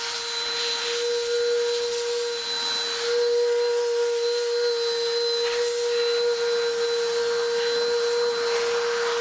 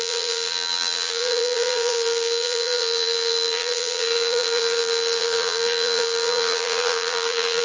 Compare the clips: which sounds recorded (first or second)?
first